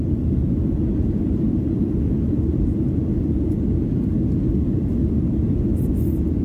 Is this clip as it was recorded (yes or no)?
no